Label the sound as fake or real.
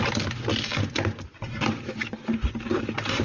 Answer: real